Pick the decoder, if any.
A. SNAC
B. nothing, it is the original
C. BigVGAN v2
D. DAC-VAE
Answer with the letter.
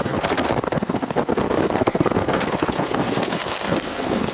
A